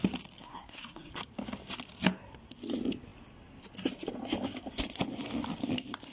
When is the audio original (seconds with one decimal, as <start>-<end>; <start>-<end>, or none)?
0.0-0.4; 1.1-6.1